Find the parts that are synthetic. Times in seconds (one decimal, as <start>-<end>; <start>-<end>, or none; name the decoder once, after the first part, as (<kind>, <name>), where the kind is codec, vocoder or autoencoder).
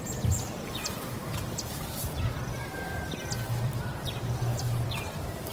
0.0-5.5 (vocoder, BigVGAN v2)